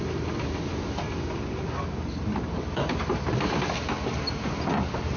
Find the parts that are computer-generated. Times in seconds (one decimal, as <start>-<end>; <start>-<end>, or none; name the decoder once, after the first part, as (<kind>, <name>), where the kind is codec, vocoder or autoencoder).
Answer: none